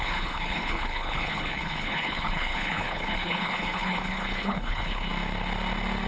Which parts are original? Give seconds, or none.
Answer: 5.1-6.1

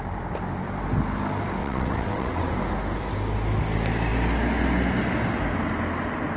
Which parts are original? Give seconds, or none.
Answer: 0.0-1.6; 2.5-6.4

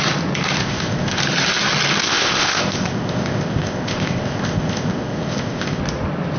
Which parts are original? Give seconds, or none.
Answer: 0.0-0.6; 1.2-2.0; 5.8-6.4